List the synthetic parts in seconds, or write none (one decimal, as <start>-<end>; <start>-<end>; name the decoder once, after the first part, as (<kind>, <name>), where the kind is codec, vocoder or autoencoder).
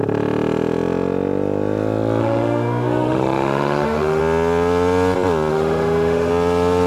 2.2-4.2 (autoencoder, DAC-VAE); 5.5-6.3